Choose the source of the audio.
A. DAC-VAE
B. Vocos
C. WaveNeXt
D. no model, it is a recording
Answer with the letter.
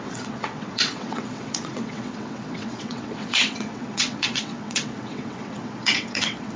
C